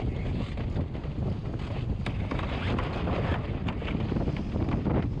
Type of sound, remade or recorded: recorded